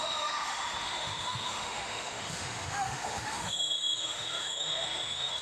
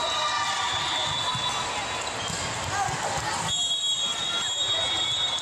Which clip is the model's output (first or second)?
first